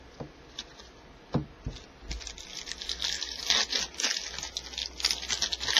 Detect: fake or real real